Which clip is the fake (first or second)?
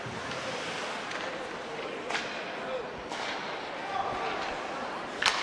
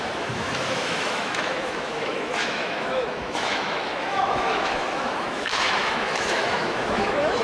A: second